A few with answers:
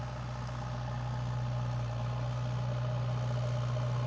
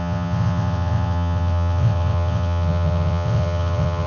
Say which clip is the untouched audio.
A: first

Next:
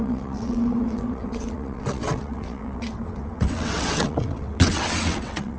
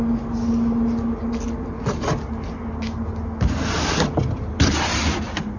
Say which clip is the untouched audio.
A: second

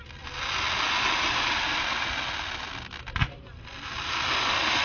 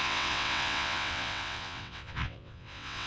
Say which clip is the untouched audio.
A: first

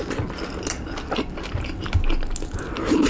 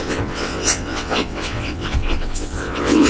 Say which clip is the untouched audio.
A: first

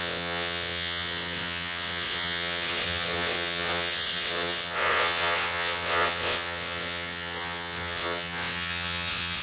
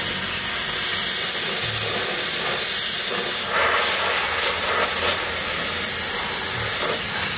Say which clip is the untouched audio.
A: second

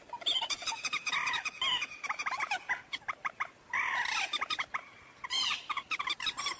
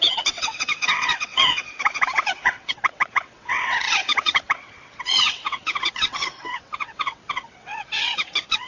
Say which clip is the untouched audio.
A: first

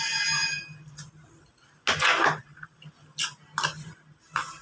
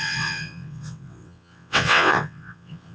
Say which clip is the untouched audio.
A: first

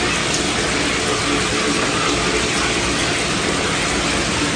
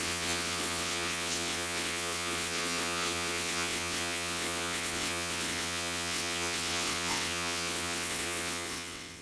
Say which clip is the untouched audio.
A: first